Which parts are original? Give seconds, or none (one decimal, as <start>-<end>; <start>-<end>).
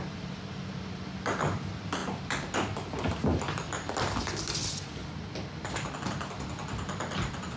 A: 2.0-4.7